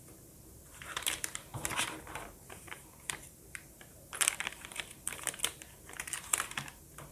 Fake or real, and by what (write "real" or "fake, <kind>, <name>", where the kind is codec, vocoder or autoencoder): fake, vocoder, BigVGAN v2